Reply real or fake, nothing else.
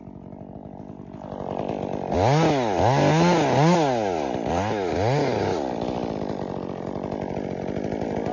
real